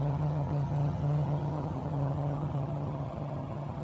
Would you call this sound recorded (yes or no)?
no